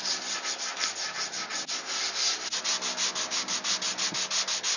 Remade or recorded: recorded